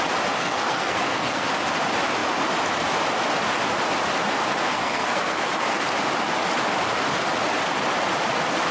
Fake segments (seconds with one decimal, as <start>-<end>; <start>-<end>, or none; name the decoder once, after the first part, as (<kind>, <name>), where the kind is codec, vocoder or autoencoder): 0.4-1.5 (codec, SNAC); 4.7-5.8